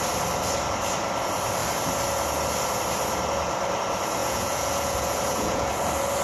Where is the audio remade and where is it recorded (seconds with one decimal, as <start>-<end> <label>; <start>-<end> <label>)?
0.0-4.2 recorded; 4.2-5.7 remade; 5.7-6.2 recorded